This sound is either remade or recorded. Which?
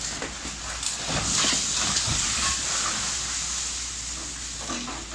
recorded